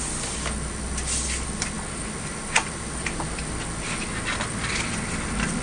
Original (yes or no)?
yes